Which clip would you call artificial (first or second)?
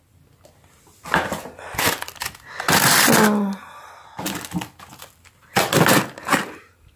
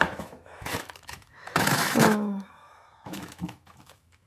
second